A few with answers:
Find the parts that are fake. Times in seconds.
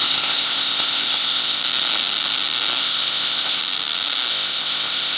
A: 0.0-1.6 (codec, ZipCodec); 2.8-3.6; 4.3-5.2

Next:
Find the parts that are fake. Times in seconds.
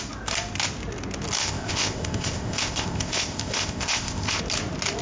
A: 1.4-4.4 (codec, ZipCodec)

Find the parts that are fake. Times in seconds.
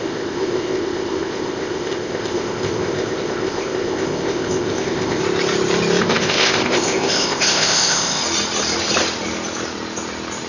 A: 0.0-5.2 (codec, ZipCodec); 6.0-8.2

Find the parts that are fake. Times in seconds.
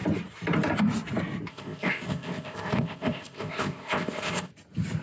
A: 1.5-4.5 (codec, ZipCodec)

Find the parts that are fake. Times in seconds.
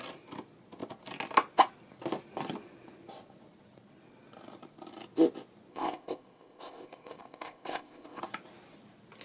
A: 5.7-8.2 (codec, ZipCodec)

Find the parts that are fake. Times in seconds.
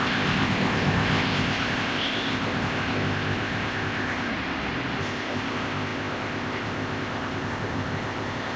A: 0.0-4.3 (codec, ZipCodec); 5.0-8.6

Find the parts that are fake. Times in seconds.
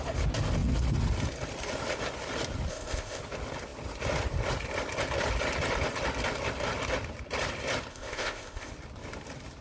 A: 2.7-3.2 (codec, ZipCodec); 7.9-8.7